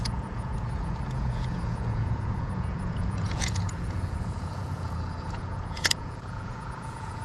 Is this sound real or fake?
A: fake